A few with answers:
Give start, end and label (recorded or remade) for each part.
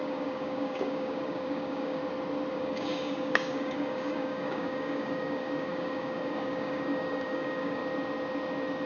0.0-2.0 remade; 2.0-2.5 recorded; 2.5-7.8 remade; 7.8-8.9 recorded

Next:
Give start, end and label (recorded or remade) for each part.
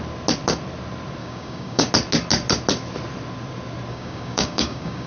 0.0-1.2 recorded; 1.2-1.9 remade; 1.9-3.9 recorded; 3.9-5.1 remade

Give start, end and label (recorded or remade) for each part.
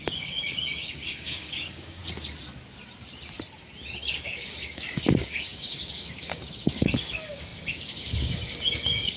0.0-2.0 remade; 2.0-4.1 recorded; 4.1-9.2 remade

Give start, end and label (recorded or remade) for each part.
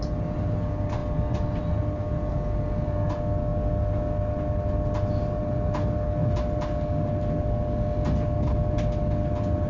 0.0-9.7 recorded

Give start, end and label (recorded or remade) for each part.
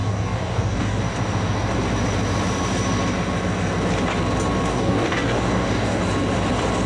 0.0-1.0 remade; 1.0-4.7 recorded; 4.7-6.0 remade; 6.0-6.9 recorded